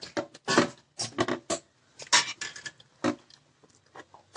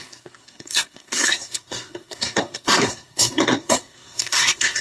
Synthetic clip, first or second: second